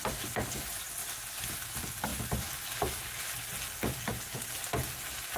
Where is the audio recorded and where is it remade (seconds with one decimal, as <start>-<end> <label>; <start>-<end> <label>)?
0.0-5.4 recorded